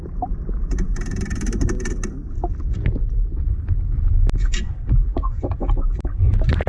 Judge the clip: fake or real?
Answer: real